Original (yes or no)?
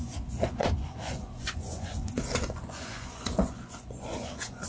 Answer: no